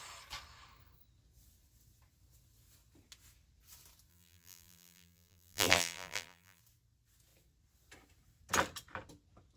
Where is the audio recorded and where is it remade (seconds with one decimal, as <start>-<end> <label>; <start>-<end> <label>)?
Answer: 0.0-4.1 recorded; 4.1-6.6 remade; 6.6-9.6 recorded